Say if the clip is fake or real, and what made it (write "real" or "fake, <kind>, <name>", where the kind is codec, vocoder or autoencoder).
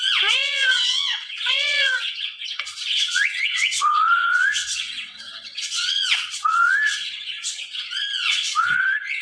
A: fake, vocoder, WaveNeXt